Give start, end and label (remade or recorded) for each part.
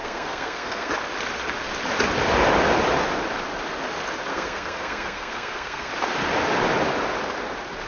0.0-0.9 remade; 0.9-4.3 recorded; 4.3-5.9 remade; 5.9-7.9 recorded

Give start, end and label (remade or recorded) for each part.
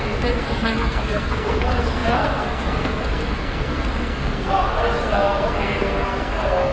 0.0-6.7 remade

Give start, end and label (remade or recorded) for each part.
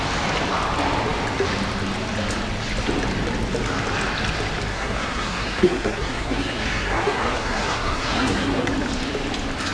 0.0-4.7 recorded; 4.7-8.7 remade; 8.7-9.7 recorded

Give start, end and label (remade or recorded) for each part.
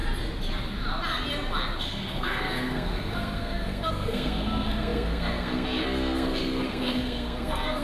0.0-1.8 recorded; 1.8-7.8 remade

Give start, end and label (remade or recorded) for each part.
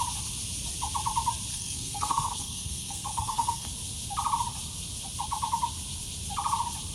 0.0-1.5 recorded; 1.5-3.7 remade; 3.7-6.9 recorded